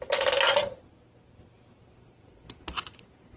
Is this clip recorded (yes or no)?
yes